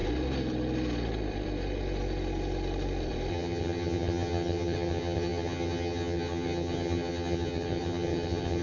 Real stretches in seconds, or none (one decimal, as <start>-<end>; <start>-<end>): 0.0-3.3